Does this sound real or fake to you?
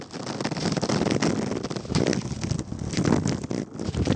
real